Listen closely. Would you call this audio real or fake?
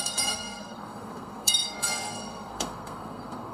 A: fake